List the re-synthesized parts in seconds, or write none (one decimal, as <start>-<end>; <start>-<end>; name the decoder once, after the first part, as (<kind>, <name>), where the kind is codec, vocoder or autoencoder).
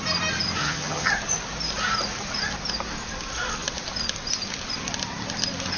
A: 0.6-1.1 (vocoder, HiFi-GAN)